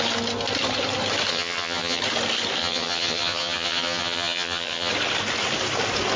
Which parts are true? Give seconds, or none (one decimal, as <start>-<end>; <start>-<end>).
0.0-1.3; 2.0-2.6; 4.9-6.2